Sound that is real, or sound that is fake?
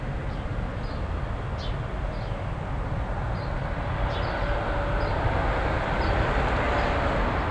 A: real